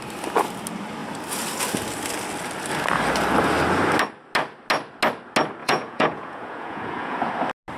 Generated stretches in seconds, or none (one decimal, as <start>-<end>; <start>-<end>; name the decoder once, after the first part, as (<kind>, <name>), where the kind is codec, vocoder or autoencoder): 5.6-7.3 (vocoder, Vocos)